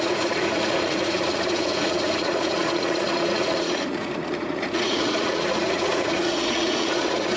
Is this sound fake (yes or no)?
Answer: yes